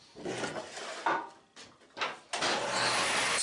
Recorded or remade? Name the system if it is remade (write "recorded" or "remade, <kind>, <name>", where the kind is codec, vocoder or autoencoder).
recorded